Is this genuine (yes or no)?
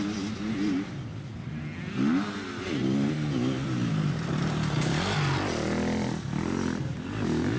yes